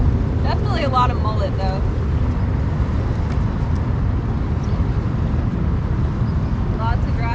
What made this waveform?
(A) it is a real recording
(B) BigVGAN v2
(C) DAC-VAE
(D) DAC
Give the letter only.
A